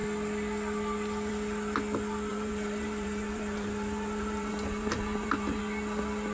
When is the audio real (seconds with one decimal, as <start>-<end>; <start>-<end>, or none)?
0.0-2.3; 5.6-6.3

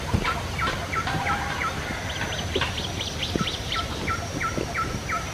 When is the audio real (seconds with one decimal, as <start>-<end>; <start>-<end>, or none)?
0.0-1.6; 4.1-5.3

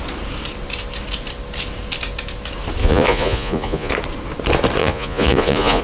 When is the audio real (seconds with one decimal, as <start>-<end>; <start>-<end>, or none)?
0.0-2.8; 3.9-4.8